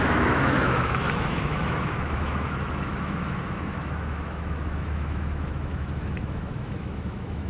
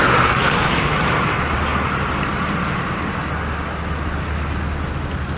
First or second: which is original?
second